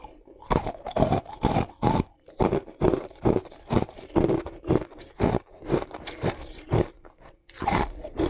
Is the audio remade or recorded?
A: remade